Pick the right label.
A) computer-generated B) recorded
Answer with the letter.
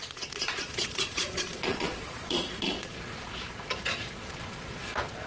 A